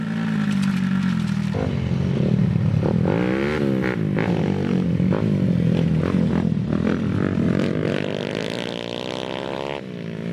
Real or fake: real